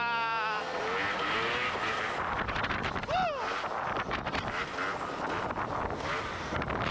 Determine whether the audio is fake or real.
real